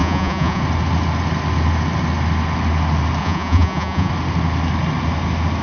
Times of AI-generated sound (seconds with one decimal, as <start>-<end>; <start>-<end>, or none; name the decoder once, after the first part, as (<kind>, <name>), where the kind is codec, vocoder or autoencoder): 0.0-0.6 (vocoder, Vocos); 3.2-4.1